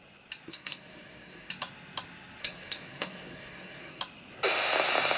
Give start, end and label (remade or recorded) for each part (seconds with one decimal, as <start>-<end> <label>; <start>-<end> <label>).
0.0-0.5 recorded; 0.5-1.5 remade; 1.5-2.4 recorded; 2.4-4.0 remade; 4.0-5.2 recorded